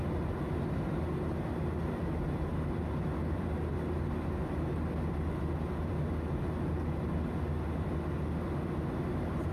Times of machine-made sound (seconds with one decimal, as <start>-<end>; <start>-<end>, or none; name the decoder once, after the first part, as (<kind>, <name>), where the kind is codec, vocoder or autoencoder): none

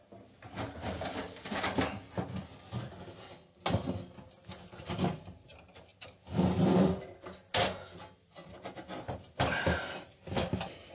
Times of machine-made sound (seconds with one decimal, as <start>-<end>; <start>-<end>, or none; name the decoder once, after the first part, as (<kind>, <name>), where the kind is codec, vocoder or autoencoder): 0.8-1.6 (codec, DAC)

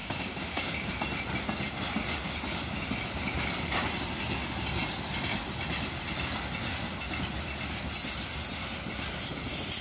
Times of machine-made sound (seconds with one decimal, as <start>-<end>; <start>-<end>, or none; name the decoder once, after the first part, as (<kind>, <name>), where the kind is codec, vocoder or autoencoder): 0.0-0.9 (codec, DAC)

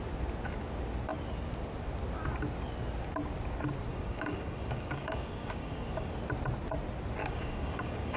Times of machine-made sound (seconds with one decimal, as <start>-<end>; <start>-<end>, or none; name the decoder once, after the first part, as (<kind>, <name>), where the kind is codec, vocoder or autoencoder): 3.9-6.1 (codec, DAC); 7.2-8.2

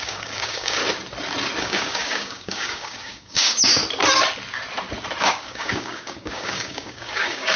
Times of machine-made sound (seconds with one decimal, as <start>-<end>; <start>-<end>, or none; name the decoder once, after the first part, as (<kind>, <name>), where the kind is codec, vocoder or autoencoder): 0.0-0.8 (codec, DAC); 1.6-3.8; 5.2-7.6

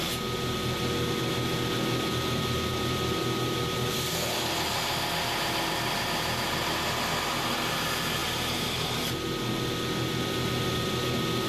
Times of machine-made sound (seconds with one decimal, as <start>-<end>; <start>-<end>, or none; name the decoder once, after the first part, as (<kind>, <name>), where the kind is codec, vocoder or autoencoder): none

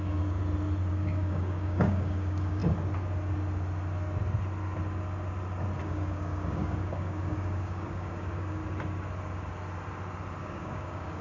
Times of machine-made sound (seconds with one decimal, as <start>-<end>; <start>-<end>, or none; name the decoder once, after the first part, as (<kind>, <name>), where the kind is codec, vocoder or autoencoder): 0.0-0.4 (codec, DAC); 0.9-2.6; 5.8-8.6; 10.4-11.2